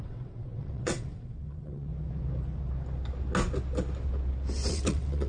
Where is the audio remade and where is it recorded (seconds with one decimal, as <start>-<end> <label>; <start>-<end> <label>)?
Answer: 0.0-1.9 remade; 1.9-4.7 recorded; 4.7-5.3 remade